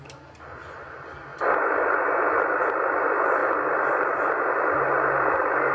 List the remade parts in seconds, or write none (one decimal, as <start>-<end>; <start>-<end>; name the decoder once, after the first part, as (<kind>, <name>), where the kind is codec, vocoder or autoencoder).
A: 3.4-4.2 (vocoder, BigVGAN v2)